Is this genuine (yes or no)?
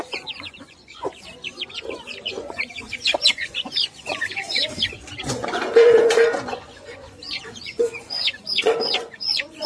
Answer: no